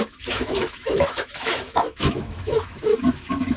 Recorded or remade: remade